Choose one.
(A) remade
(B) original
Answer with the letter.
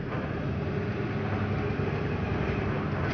B